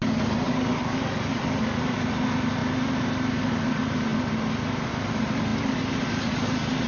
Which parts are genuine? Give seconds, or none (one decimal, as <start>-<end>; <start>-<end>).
0.0-6.9